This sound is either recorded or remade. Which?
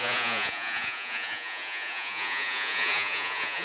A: remade